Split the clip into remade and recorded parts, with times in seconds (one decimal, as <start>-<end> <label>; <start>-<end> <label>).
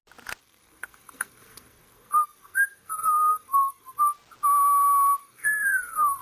0.0-0.4 recorded; 0.4-4.1 remade; 4.1-5.2 recorded; 5.2-6.2 remade